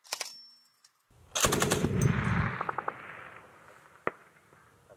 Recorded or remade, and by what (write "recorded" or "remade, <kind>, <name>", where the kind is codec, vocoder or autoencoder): recorded